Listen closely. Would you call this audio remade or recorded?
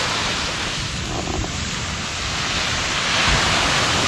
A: recorded